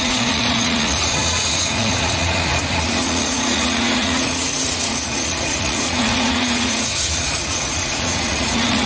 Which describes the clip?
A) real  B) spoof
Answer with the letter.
B